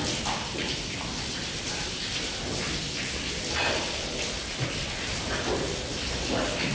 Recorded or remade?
recorded